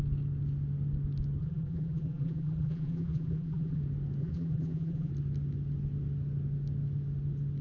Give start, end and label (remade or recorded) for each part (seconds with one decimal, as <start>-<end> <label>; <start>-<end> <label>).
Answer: 0.0-1.4 recorded; 1.4-3.8 remade; 3.8-4.2 recorded; 4.2-5.1 remade; 5.1-7.6 recorded